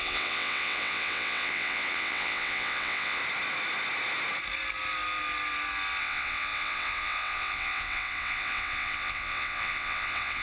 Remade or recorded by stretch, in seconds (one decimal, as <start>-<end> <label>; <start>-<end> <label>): 0.0-3.2 remade; 3.2-6.0 recorded; 6.0-10.4 remade